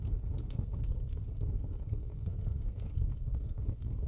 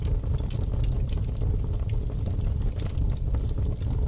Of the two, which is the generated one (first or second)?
first